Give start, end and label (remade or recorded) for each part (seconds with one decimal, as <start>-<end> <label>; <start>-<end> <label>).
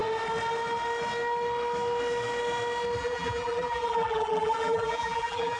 0.0-3.0 recorded; 3.0-5.6 remade